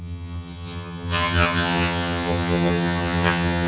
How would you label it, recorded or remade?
remade